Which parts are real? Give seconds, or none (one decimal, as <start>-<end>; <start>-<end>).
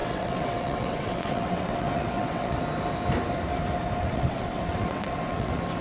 2.6-4.0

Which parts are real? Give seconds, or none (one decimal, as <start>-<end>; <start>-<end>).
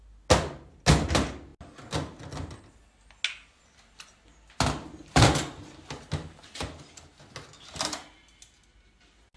0.0-9.4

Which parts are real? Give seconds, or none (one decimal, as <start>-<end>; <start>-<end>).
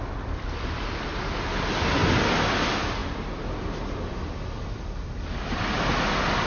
0.0-6.5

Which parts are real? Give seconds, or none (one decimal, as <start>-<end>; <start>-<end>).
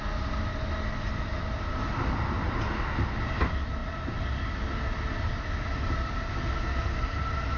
0.0-7.6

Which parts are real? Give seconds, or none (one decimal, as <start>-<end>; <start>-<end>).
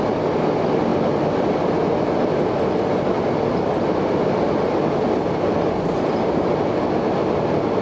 0.0-7.8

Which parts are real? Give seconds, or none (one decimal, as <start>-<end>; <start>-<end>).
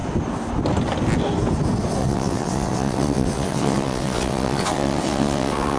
0.0-2.0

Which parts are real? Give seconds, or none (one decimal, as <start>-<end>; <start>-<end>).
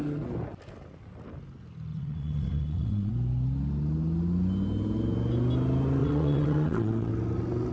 0.0-1.9; 3.1-6.0; 7.1-7.7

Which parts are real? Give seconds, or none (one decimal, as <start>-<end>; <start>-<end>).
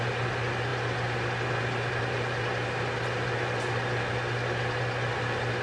0.0-5.6